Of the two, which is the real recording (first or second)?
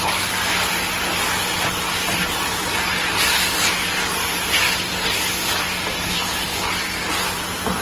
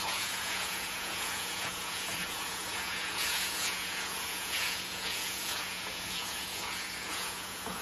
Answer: first